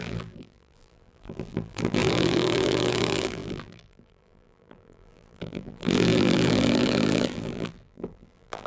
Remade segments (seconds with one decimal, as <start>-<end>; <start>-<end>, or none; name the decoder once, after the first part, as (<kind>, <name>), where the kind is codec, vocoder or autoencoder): 0.0-8.7 (vocoder, BigVGAN v2)